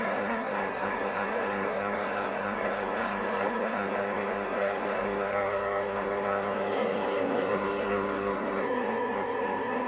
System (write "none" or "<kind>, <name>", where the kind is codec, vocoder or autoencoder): codec, SNAC